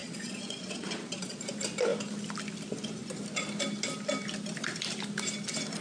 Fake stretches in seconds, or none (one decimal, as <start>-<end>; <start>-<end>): 0.0-1.5